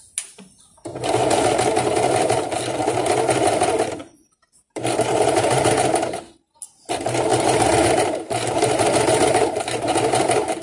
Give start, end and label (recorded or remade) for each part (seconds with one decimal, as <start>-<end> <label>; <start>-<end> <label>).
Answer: 0.0-4.0 recorded; 4.0-5.7 remade; 5.7-7.3 recorded; 7.3-10.0 remade; 10.0-10.6 recorded